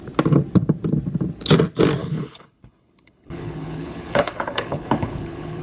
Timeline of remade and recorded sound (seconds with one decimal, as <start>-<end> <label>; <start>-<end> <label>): 0.0-2.0 recorded; 2.0-5.6 remade